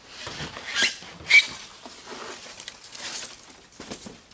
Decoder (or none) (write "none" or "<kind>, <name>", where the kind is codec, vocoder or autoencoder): none